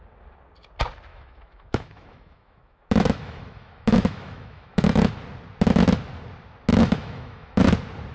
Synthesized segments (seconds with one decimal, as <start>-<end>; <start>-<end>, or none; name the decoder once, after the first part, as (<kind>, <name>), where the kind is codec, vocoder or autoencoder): 1.1-5.1 (autoencoder, DAC-VAE); 6.7-7.6